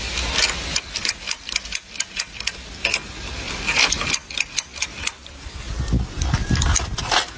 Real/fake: real